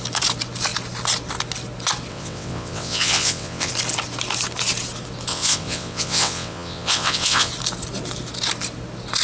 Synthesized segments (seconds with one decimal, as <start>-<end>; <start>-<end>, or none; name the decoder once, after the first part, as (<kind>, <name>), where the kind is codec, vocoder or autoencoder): 2.1-3.7 (vocoder, WaveNeXt); 5.3-7.5